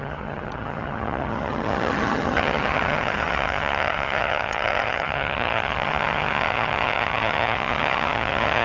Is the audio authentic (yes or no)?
no